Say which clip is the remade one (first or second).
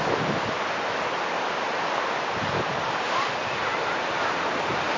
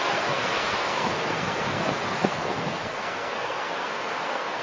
second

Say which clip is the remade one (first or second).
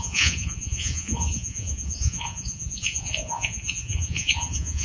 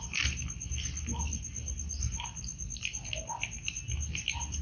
first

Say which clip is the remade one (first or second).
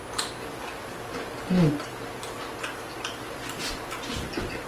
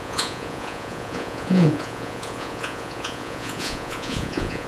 second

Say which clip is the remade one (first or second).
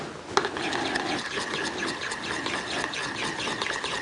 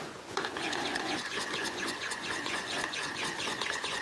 second